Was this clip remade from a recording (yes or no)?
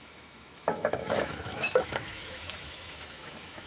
yes